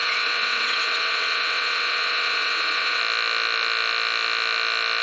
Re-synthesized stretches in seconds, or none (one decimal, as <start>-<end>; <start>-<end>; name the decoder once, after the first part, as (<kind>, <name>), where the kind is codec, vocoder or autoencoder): 0.0-3.0 (vocoder, WaveNeXt)